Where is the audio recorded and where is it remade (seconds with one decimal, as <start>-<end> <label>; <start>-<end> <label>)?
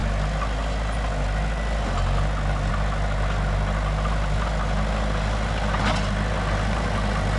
0.0-7.4 recorded